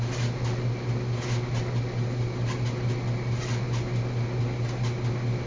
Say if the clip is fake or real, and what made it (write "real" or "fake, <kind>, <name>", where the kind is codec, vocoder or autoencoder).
real